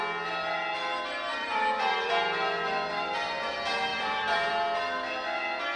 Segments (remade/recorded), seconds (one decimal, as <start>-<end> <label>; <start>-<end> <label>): 0.0-1.3 recorded; 1.3-2.1 remade; 2.1-3.9 recorded; 3.9-4.5 remade; 4.5-5.8 recorded